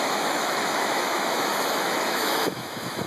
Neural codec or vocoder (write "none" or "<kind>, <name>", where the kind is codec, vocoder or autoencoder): autoencoder, DAC-VAE